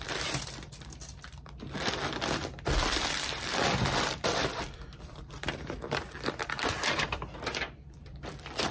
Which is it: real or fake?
fake